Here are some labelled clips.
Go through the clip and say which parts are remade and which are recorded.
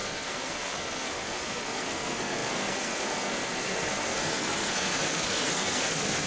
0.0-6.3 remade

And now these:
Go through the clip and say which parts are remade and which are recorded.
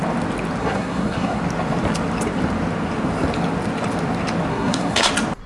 0.0-0.6 recorded; 0.6-1.4 remade; 1.4-4.5 recorded; 4.5-5.1 remade; 5.1-5.5 recorded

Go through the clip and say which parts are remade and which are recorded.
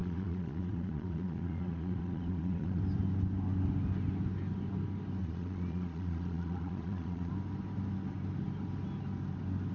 0.0-2.8 remade; 2.8-5.2 recorded; 5.2-7.3 remade; 7.3-9.7 recorded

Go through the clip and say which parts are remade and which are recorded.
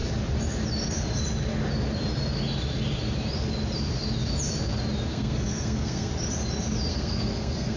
0.0-5.1 recorded; 5.1-6.1 remade; 6.1-6.9 recorded; 6.9-7.8 remade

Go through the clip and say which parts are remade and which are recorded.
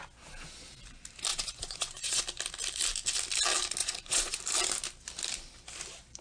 0.0-1.3 recorded; 1.3-2.2 remade; 2.2-3.8 recorded; 3.8-4.4 remade; 4.4-6.2 recorded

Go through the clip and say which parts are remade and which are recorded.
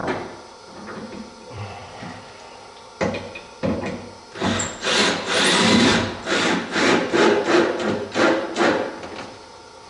0.0-1.8 remade; 1.8-4.3 recorded; 4.3-5.9 remade; 5.9-7.9 recorded; 7.9-9.9 remade